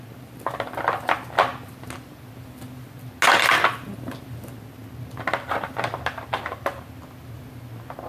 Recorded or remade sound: recorded